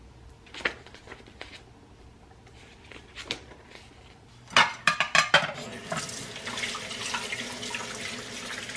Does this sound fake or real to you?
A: real